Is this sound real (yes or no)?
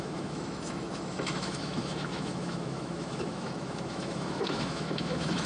no